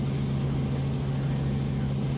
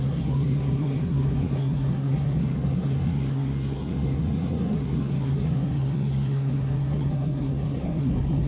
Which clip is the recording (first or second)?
first